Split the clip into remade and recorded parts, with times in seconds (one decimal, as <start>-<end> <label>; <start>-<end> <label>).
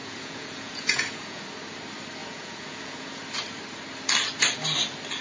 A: 0.0-1.4 remade; 1.4-2.2 recorded; 2.2-3.2 remade; 3.2-5.2 recorded